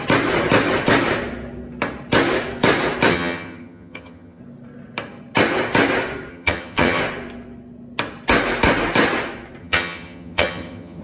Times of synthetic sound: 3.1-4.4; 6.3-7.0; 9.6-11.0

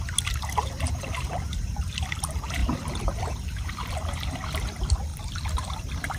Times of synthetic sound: none

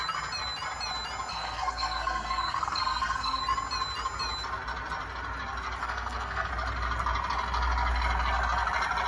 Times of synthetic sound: 1.3-3.4; 5.8-6.5

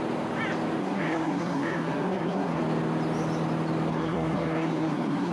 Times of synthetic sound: 0.8-2.6; 3.9-5.3

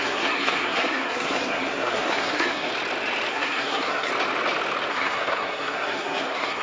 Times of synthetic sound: 0.0-2.7; 3.3-4.1; 4.9-6.6

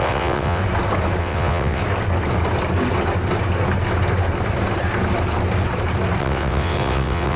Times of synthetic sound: 0.0-0.6; 1.2-1.8; 6.2-7.4

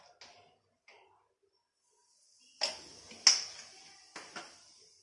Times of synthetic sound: none

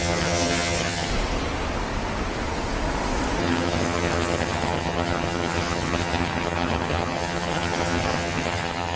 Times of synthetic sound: 0.0-1.1; 3.4-9.0